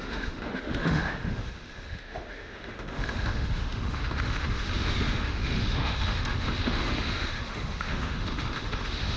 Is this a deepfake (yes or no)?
yes